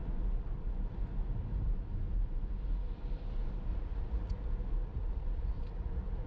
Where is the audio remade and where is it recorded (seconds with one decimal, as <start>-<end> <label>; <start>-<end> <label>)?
0.0-3.7 recorded; 3.7-4.3 remade; 4.3-4.9 recorded; 4.9-6.3 remade